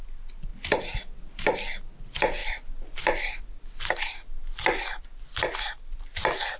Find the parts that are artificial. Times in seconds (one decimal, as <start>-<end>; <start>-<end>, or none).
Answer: none